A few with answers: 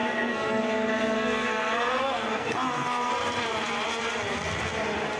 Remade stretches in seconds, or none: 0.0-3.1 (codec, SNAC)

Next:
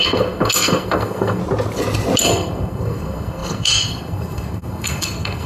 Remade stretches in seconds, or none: 0.0-1.4 (codec, SNAC); 2.2-5.5

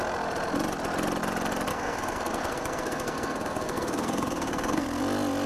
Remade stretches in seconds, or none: 1.7-5.0 (codec, SNAC)

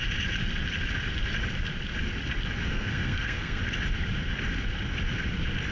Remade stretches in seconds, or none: 2.7-3.6 (codec, SNAC)

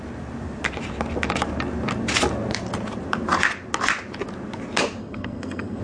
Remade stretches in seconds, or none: 5.0-5.8 (codec, SNAC)

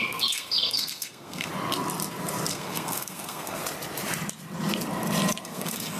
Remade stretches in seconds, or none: 0.0-1.5 (codec, SNAC); 2.5-3.6; 5.4-6.0